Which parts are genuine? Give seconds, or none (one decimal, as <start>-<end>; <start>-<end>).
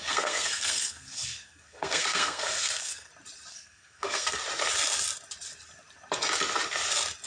3.1-3.5; 4.4-7.3